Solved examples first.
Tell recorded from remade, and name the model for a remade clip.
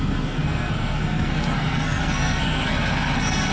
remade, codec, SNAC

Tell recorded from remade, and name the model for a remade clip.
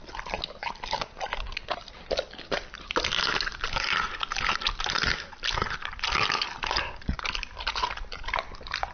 recorded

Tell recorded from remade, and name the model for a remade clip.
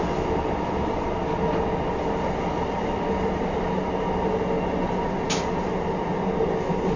recorded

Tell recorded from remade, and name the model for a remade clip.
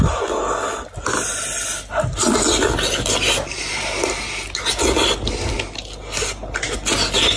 recorded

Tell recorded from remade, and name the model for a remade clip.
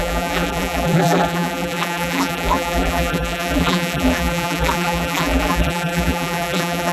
remade, vocoder, BigVGAN v2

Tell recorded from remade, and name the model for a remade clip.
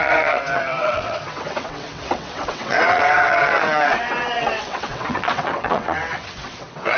remade, vocoder, WaveNeXt